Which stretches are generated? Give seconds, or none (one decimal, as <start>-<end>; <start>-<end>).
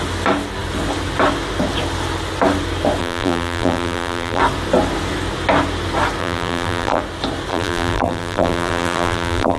3.0-4.4; 6.2-7.0; 7.5-9.6